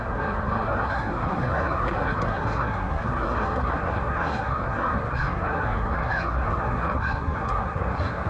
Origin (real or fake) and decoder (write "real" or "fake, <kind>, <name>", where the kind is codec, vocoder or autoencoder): fake, codec, SNAC